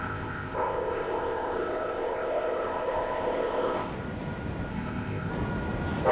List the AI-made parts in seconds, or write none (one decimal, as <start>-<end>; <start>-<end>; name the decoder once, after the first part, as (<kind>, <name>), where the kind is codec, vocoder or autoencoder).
0.0-3.9 (codec, ZipCodec); 4.7-5.3